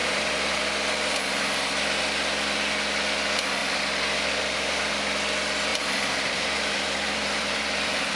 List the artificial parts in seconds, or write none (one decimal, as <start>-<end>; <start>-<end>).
0.0-0.6; 5.7-8.2